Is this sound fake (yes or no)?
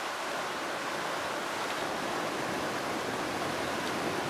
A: no